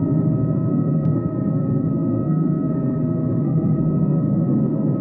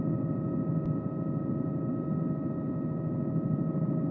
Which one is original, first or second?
second